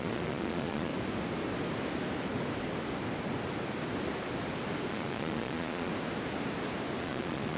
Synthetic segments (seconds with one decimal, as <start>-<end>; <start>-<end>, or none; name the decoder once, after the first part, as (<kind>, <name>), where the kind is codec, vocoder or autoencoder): 0.0-0.9 (vocoder, Vocos); 4.9-5.9; 7.0-7.6